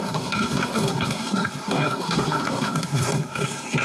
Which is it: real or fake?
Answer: fake